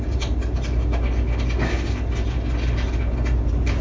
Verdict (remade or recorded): recorded